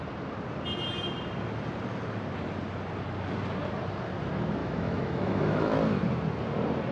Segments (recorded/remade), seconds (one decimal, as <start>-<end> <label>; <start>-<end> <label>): 0.0-4.6 recorded; 4.6-5.8 remade; 5.8-6.9 recorded